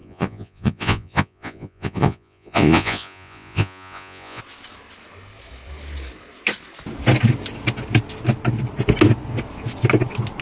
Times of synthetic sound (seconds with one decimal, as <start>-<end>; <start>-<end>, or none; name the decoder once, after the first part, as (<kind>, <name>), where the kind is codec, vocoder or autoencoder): 0.0-4.4 (vocoder, Vocos)